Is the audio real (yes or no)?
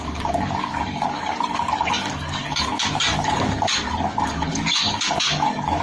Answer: no